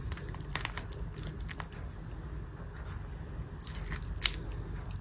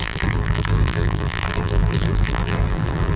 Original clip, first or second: first